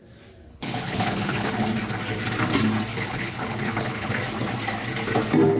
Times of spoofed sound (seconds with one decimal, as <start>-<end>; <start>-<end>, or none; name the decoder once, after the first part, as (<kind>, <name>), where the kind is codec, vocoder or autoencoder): 0.5-1.5 (codec, HILCodec); 2.9-4.1